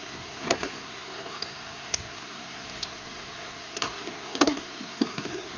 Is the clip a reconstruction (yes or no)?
yes